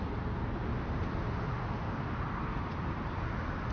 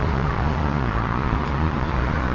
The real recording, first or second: first